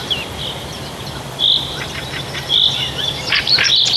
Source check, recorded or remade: remade